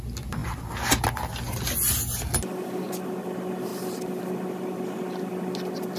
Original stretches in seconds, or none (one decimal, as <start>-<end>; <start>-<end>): 0.0-6.0

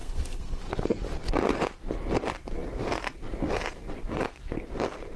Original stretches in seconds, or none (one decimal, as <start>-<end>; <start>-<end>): 0.6-5.2

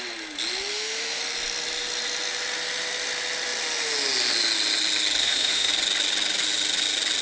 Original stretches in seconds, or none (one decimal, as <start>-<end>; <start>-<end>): 0.0-0.7; 1.2-5.2; 5.7-7.2